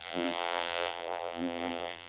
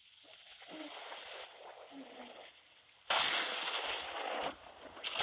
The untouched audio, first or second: second